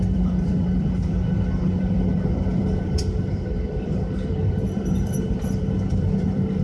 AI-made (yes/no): yes